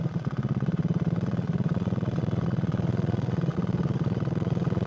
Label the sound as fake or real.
fake